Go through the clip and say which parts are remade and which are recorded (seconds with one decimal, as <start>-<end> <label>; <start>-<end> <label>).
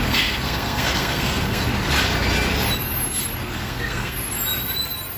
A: 0.0-1.7 remade; 1.7-3.4 recorded; 3.4-4.2 remade; 4.2-5.2 recorded